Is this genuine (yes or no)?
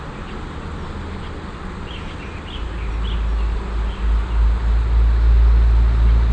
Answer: yes